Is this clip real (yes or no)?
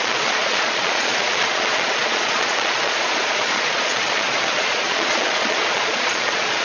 no